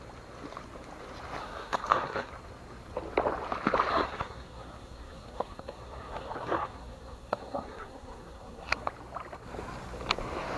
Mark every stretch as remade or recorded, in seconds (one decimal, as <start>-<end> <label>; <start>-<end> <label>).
0.0-1.4 recorded; 1.4-2.3 remade; 2.3-3.9 recorded; 3.9-8.9 remade; 8.9-10.6 recorded